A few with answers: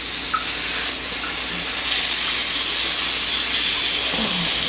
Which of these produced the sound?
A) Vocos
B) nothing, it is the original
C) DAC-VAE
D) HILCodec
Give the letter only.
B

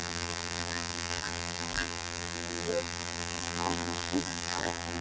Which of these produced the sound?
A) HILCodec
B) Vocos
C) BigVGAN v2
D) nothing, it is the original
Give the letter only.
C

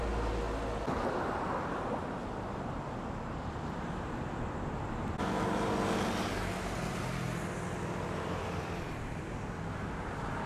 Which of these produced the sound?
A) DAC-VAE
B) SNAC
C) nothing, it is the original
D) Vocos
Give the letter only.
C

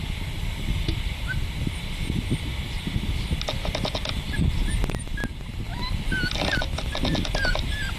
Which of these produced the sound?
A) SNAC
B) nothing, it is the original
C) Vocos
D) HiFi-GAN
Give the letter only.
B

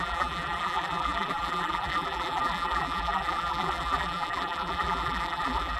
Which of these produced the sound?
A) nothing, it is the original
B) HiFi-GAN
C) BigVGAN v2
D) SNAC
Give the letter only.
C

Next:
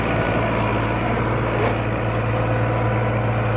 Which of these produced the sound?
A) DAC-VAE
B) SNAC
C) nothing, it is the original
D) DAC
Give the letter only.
C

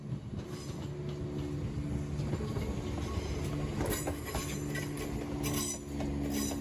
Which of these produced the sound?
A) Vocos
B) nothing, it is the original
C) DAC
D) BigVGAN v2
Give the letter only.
B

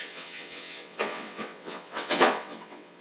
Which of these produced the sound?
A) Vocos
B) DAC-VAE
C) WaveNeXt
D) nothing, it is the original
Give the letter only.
C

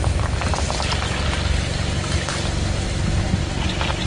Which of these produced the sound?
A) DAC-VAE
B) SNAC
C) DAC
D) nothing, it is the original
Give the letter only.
D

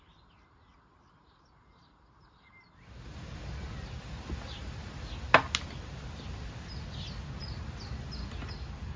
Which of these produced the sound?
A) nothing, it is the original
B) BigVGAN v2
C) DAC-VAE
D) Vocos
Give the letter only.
A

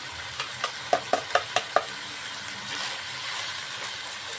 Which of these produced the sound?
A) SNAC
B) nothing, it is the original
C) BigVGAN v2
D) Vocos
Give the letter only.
B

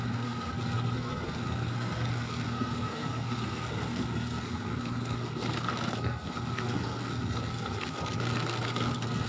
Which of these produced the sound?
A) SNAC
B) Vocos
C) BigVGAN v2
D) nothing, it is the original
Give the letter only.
A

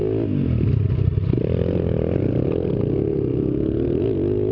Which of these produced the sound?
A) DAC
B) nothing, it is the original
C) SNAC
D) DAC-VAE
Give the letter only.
B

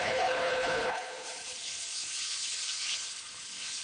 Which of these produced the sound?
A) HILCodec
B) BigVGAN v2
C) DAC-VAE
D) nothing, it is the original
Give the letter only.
A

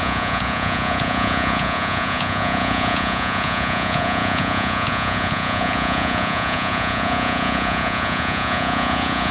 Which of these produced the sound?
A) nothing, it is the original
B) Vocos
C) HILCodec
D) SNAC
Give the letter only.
B